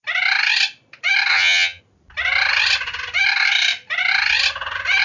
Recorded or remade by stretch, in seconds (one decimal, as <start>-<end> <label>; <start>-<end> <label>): 0.0-1.3 recorded; 1.3-1.8 remade; 1.8-5.0 recorded